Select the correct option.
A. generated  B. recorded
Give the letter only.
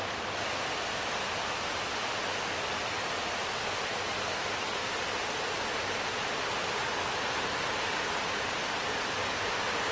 B